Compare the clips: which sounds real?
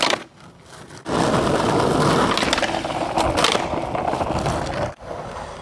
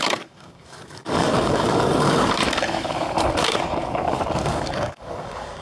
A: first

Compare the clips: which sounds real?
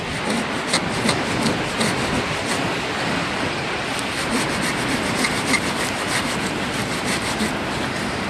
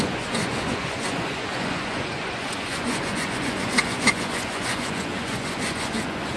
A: first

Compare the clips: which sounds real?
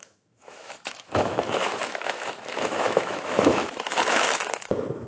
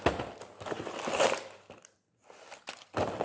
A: second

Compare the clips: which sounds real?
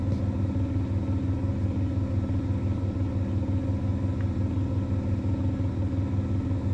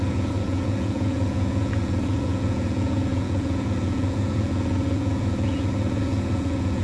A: first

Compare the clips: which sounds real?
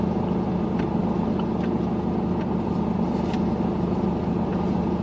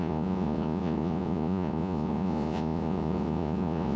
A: first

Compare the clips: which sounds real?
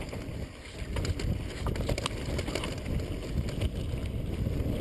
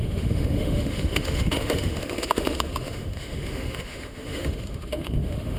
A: first